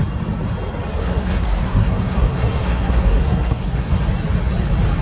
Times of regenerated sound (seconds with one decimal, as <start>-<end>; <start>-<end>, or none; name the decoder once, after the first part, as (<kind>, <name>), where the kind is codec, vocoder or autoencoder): 1.0-4.0 (codec, SNAC)